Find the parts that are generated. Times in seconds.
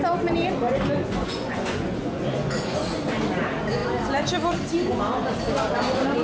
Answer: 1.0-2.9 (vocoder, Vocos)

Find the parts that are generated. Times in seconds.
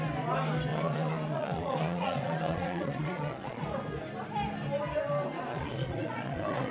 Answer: 0.7-3.6 (vocoder, Vocos); 5.5-6.7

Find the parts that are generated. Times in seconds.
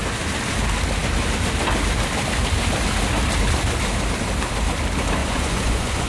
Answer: 5.2-6.1 (vocoder, Vocos)